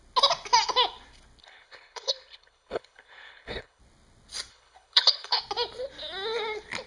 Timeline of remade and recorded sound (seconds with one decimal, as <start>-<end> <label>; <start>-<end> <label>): 0.0-1.4 recorded; 1.4-3.8 remade; 3.8-4.5 recorded; 4.5-5.4 remade; 5.4-6.9 recorded